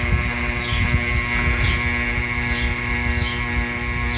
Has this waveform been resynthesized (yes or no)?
no